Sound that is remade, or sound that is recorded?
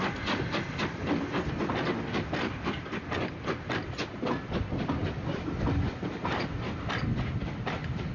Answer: recorded